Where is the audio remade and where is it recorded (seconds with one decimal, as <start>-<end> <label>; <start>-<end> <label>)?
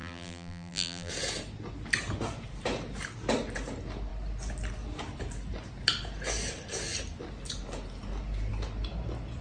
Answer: 0.0-1.1 remade; 1.1-9.4 recorded